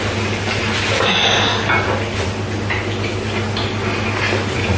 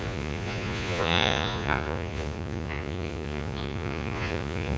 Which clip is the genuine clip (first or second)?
first